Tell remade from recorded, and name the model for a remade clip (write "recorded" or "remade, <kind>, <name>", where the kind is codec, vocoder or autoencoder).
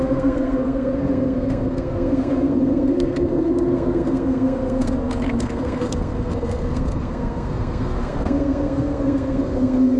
remade, codec, SNAC